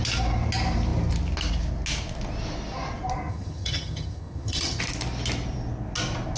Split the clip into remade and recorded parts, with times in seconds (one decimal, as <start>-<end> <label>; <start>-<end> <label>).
0.0-3.3 recorded; 3.3-4.8 remade; 4.8-6.4 recorded